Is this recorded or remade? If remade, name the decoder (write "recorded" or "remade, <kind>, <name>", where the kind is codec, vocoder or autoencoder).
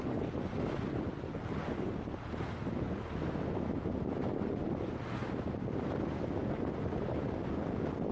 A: recorded